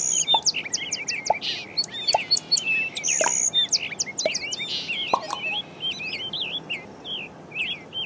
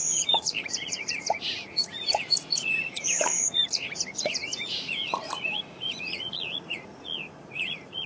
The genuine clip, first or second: first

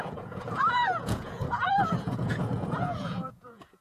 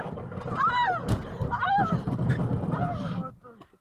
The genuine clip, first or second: second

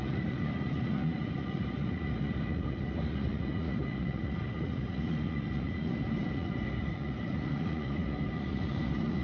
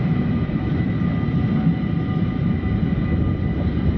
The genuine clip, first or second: second